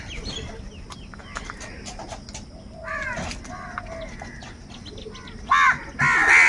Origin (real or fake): real